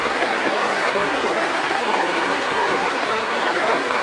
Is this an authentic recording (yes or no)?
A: no